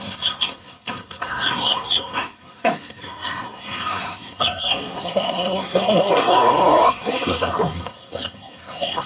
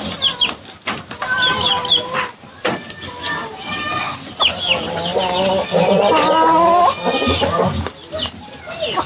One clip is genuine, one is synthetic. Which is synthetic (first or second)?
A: first